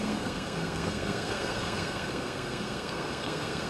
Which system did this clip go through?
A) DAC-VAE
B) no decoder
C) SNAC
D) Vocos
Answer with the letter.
C